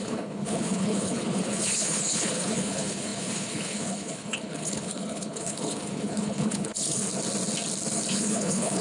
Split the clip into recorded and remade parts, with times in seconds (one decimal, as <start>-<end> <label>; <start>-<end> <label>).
0.0-7.1 remade; 7.1-8.1 recorded; 8.1-8.8 remade